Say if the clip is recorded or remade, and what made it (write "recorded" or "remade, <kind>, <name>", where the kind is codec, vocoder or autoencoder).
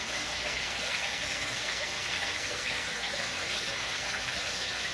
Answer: remade, codec, SNAC